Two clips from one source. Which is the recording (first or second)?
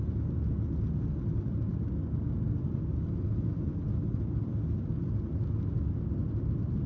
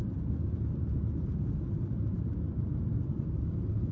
first